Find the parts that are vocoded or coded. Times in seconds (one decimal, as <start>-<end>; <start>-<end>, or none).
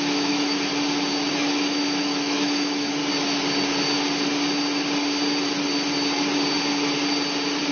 0.0-0.7; 1.3-3.0